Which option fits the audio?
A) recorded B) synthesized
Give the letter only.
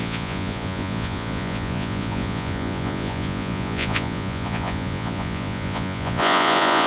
B